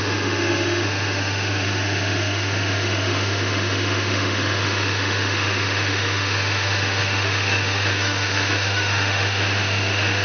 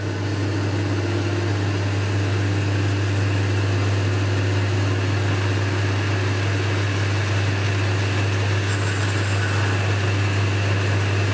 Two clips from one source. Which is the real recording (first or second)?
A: second